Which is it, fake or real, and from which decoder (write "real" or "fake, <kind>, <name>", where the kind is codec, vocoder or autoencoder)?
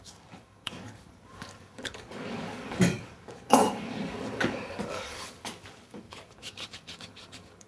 fake, codec, DAC